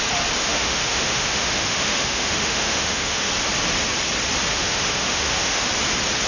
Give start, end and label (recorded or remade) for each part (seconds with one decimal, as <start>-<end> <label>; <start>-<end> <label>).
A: 0.0-0.4 recorded; 0.4-3.3 remade; 3.3-4.5 recorded; 4.5-5.7 remade; 5.7-6.3 recorded